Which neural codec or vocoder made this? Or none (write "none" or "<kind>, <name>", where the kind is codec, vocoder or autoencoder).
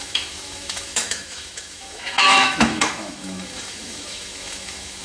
autoencoder, DAC-VAE